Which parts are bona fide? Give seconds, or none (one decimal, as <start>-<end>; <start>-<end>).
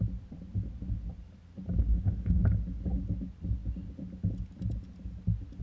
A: 0.0-1.9; 2.4-5.6